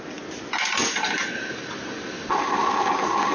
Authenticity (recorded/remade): recorded